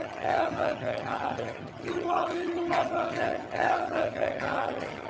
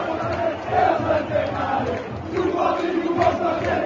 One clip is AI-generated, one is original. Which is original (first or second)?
second